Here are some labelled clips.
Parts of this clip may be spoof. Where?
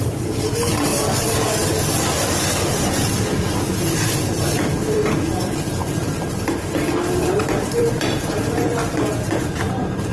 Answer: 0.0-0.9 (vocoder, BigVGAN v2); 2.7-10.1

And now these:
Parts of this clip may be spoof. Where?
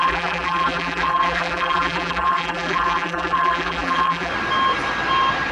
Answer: 0.0-4.3 (vocoder, BigVGAN v2)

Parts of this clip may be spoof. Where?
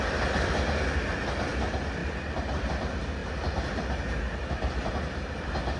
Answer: none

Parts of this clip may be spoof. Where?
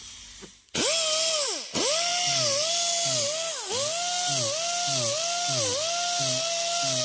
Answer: none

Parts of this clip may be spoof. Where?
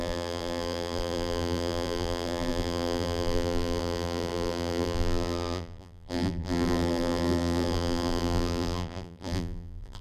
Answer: 0.0-10.0 (vocoder, BigVGAN v2)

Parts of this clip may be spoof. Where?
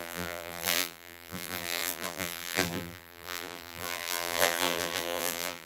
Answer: 0.0-5.7 (vocoder, BigVGAN v2)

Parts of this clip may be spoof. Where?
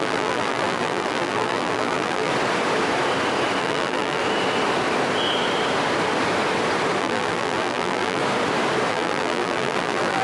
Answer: 0.0-2.3 (vocoder, BigVGAN v2); 3.6-4.2; 7.0-8.2; 8.9-10.2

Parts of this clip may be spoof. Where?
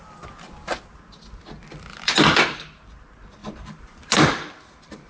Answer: 3.4-5.1 (vocoder, BigVGAN v2)